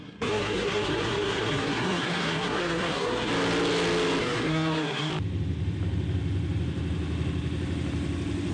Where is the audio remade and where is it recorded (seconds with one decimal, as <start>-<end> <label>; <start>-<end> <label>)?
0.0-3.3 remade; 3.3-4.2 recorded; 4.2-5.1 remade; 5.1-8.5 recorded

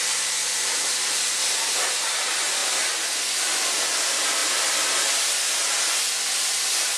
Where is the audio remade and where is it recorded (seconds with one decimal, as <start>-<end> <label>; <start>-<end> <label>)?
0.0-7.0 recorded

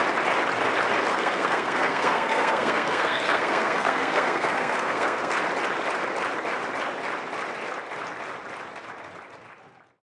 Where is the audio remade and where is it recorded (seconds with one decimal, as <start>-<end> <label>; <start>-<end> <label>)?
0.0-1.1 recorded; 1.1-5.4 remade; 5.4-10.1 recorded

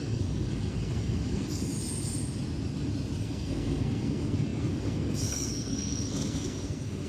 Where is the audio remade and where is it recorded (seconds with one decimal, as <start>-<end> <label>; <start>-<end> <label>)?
0.0-1.7 remade; 1.7-3.2 recorded; 3.2-7.1 remade

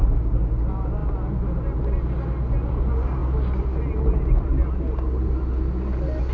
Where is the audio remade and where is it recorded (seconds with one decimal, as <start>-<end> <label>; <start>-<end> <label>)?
0.0-6.3 recorded